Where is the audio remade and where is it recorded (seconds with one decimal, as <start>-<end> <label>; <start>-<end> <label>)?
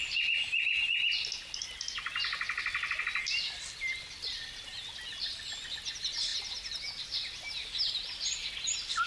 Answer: 0.0-9.1 recorded